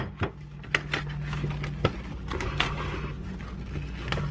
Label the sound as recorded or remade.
recorded